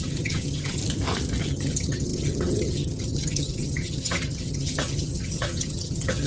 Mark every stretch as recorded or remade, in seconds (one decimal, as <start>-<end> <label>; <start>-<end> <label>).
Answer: 0.0-0.8 remade; 0.8-1.4 recorded; 1.4-6.3 remade